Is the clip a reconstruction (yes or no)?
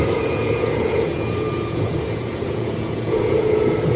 yes